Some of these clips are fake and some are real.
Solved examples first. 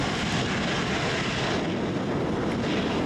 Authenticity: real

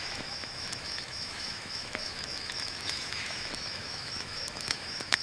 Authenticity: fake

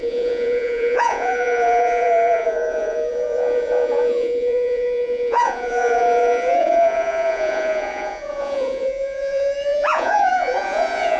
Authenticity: fake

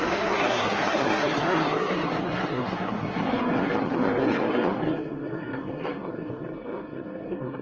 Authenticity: fake